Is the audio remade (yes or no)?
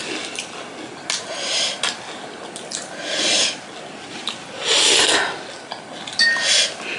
no